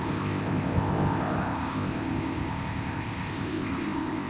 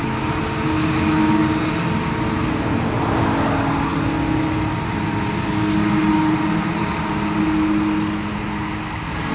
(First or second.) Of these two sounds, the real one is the second